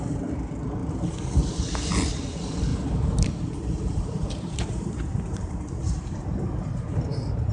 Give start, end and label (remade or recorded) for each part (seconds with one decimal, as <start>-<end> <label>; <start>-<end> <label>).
0.0-2.7 recorded; 2.7-7.5 remade